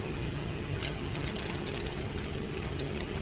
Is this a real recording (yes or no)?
no